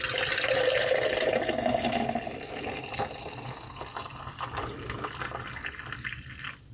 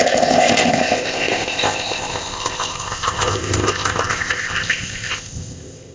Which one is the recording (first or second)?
first